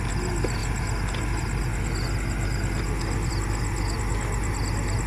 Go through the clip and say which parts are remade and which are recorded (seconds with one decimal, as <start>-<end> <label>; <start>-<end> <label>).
0.0-5.1 recorded